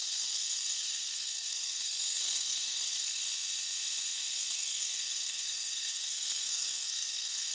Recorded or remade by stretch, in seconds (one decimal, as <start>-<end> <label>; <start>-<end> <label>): 0.0-3.2 remade; 3.2-4.1 recorded; 4.1-7.5 remade

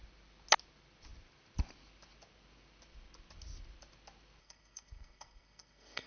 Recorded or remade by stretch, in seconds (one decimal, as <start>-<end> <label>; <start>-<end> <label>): 0.0-4.4 recorded; 4.4-6.1 remade